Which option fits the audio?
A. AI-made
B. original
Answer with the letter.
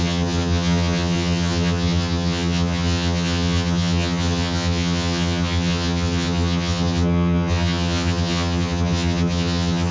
A